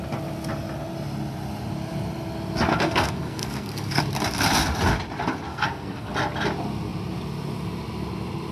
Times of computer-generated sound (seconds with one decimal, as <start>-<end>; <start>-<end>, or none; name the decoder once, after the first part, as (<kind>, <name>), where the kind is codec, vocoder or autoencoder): 2.7-4.0 (codec, SNAC); 5.5-6.1